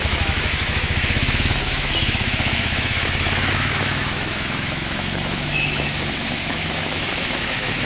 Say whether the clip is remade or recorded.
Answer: remade